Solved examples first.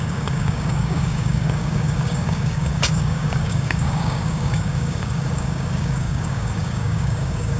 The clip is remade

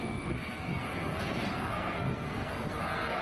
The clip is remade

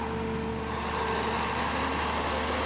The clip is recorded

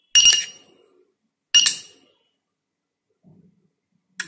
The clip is recorded